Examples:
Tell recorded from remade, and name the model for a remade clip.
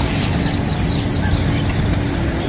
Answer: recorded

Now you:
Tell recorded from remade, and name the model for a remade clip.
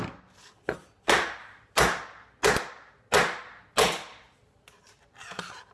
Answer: recorded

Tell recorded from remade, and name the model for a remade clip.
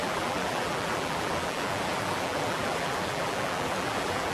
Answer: remade, vocoder, BigVGAN v2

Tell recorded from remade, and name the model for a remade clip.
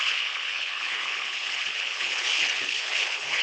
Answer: remade, codec, HILCodec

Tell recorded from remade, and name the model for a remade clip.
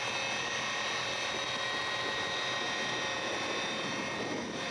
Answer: recorded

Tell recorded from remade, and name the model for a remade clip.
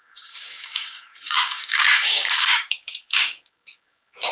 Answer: remade, codec, DAC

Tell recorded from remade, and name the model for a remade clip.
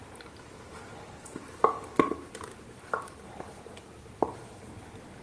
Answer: remade, vocoder, BigVGAN v2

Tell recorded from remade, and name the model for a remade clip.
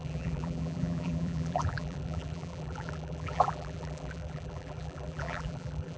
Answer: remade, vocoder, BigVGAN v2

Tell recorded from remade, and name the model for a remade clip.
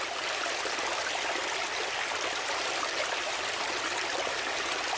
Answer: recorded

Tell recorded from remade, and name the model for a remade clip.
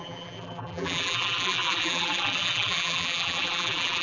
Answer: remade, vocoder, BigVGAN v2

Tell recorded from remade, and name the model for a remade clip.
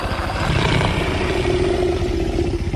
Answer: recorded